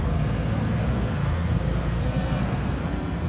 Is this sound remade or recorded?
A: remade